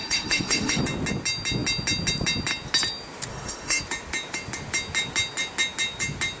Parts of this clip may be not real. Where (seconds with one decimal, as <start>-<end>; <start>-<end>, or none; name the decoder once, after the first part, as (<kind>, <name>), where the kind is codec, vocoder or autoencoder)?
0.0-0.8 (autoencoder, DAC-VAE); 3.3-3.8